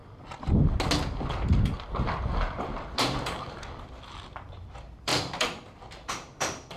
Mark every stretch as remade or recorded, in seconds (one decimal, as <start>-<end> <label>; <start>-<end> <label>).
0.0-2.9 recorded; 2.9-6.8 remade